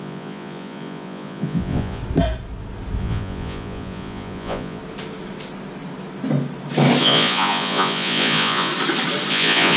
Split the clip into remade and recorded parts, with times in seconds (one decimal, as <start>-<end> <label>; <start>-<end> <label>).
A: 0.0-2.0 remade; 2.0-3.0 recorded; 3.0-4.8 remade; 4.8-7.0 recorded; 7.0-8.7 remade; 8.7-9.3 recorded; 9.3-9.8 remade